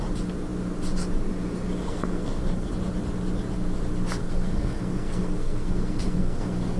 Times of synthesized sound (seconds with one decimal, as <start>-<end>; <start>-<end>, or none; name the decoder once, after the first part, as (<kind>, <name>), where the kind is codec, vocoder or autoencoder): 1.8-2.7 (codec, SNAC); 4.2-6.8